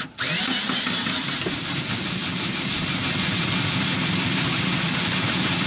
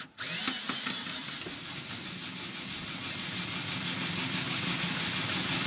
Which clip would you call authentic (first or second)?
second